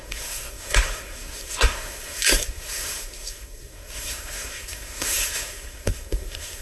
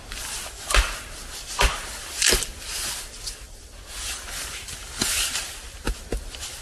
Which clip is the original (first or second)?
second